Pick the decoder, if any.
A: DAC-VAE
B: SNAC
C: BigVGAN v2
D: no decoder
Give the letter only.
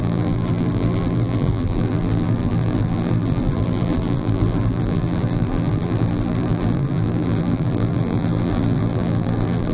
C